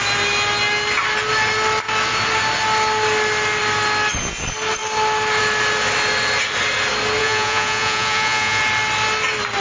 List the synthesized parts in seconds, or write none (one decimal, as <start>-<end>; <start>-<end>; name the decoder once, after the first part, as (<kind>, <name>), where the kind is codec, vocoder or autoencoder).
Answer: 7.2-8.6 (vocoder, Vocos)